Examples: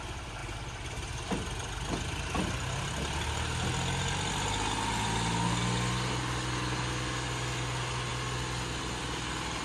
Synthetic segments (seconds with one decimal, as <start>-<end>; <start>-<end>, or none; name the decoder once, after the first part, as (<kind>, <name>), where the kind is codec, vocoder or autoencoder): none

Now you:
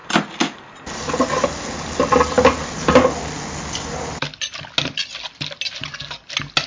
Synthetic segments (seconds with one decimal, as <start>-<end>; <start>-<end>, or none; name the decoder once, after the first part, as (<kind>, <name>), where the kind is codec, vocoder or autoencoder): none

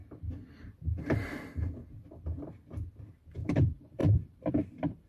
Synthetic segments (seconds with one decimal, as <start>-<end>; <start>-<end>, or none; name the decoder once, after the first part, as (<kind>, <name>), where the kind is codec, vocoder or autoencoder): 3.1-5.1 (vocoder, BigVGAN v2)